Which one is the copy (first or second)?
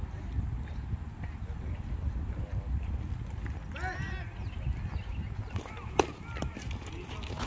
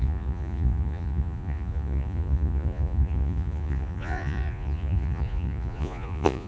second